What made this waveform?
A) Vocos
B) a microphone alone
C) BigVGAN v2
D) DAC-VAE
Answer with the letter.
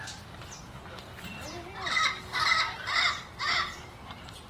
B